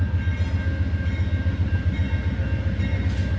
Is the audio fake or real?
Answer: real